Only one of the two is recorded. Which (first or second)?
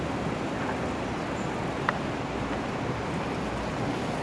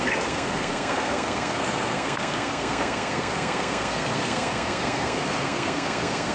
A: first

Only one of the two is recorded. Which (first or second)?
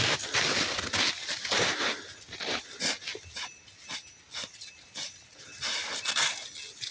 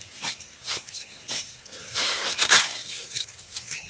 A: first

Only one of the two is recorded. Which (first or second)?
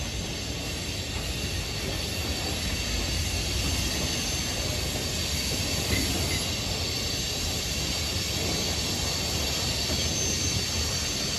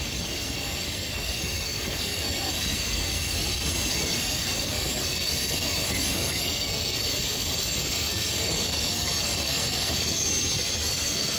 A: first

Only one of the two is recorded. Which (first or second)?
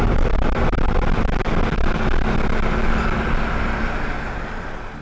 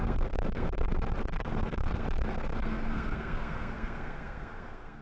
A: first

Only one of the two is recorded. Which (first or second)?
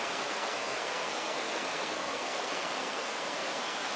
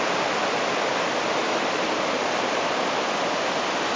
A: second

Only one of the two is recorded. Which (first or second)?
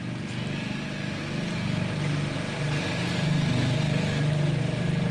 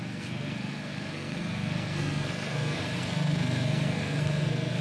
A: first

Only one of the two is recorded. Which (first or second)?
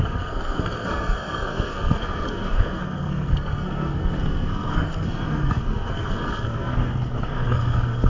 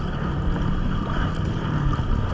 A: second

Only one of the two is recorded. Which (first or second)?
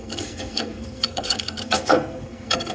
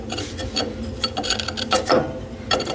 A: second